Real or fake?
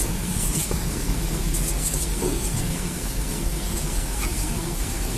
fake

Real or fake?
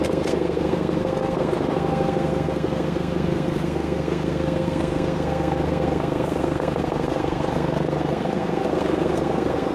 fake